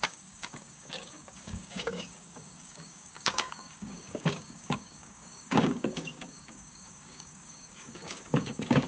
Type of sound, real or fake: fake